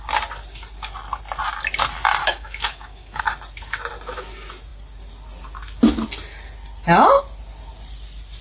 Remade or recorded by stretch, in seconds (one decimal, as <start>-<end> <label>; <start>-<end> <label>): 0.0-2.2 recorded; 2.2-3.2 remade; 3.2-8.4 recorded